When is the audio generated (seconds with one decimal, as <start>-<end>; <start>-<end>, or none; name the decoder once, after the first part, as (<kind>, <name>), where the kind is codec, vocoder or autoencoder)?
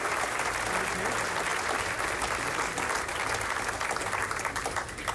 none